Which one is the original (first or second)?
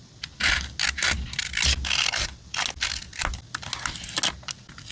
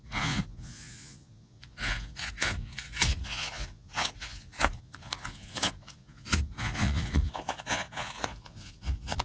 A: first